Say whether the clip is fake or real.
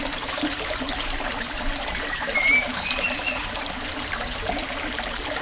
fake